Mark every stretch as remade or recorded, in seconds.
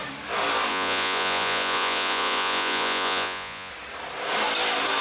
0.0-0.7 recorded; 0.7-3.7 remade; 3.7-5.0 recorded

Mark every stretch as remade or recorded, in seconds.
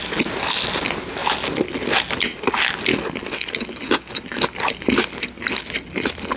0.0-6.4 recorded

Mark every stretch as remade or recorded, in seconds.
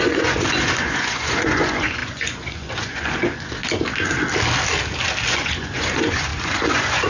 0.0-3.6 remade; 3.6-5.3 recorded; 5.3-7.1 remade